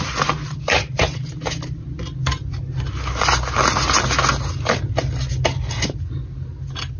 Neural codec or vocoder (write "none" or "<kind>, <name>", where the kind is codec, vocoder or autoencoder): none